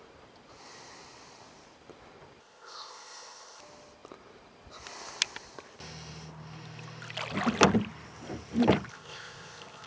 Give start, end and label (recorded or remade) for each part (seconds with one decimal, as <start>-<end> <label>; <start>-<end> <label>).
0.0-2.4 recorded; 2.4-3.6 remade; 3.6-8.9 recorded; 8.9-9.9 remade